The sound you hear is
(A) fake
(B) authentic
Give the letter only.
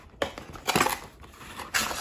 B